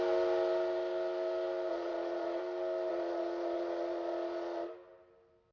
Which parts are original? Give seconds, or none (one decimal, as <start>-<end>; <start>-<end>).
0.0-1.7; 2.4-2.9; 4.7-5.5